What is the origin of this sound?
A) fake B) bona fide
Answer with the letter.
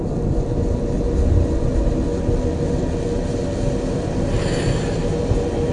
B